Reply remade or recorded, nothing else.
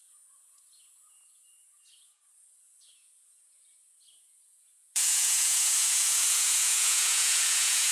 remade